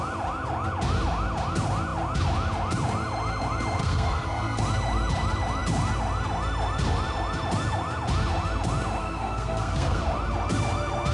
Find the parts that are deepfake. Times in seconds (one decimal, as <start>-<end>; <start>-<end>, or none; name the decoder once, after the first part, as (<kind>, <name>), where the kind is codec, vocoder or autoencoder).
3.8-4.6 (codec, SNAC); 9.0-10.0